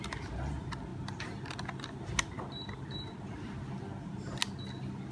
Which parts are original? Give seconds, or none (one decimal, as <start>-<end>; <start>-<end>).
0.0-5.1